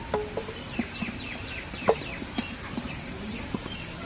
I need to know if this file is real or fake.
real